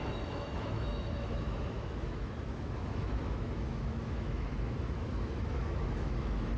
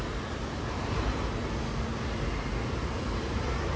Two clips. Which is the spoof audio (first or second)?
first